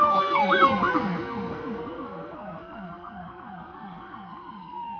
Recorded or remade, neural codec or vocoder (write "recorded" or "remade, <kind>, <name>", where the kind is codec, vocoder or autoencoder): remade, codec, SNAC